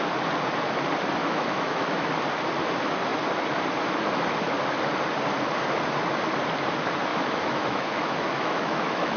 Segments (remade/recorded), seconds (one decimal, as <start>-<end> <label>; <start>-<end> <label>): 0.0-1.2 recorded; 1.2-2.1 remade; 2.1-7.1 recorded; 7.1-9.2 remade